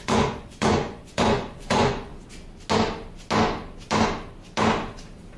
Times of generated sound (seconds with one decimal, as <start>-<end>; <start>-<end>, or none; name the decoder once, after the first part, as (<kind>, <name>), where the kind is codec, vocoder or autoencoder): 0.0-2.1 (vocoder, Vocos)